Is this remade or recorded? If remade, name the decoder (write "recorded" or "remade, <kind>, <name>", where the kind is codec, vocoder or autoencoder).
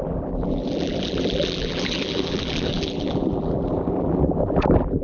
remade, vocoder, BigVGAN v2